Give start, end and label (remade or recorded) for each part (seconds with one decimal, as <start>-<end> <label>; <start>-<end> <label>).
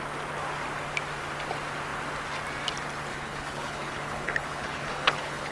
0.0-3.1 recorded; 3.1-5.5 remade